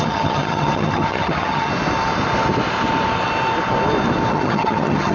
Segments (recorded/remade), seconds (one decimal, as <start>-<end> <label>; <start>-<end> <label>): 0.0-1.7 remade; 1.7-4.3 recorded; 4.3-5.1 remade

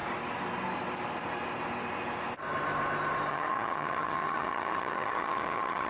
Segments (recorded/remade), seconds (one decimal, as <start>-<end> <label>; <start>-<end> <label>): 0.0-3.3 recorded; 3.3-5.9 remade